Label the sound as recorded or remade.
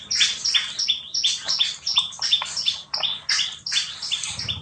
recorded